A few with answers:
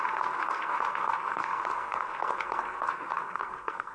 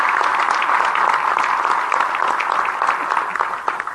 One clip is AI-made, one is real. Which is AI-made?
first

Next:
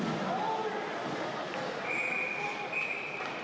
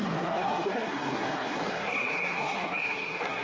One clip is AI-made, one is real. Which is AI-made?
second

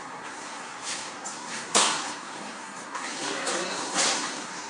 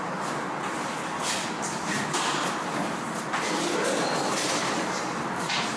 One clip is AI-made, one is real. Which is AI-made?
first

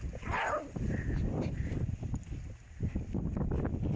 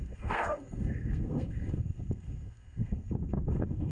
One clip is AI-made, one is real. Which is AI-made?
second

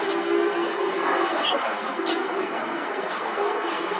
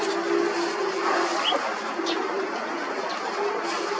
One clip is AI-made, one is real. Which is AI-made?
first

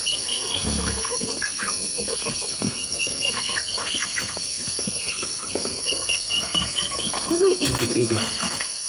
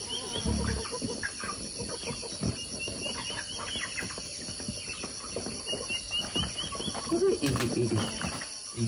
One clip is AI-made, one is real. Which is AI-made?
first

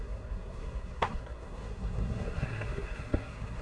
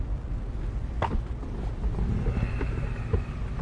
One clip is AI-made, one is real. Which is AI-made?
first